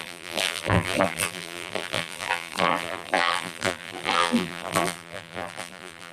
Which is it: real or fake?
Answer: fake